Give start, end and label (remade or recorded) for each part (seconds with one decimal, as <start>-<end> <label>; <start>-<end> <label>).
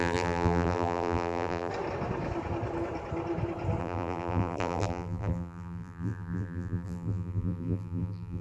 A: 0.0-1.7 remade; 1.7-3.8 recorded; 3.8-8.4 remade